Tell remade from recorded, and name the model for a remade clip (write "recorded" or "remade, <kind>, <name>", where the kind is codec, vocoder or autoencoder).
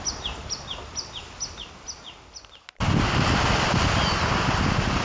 recorded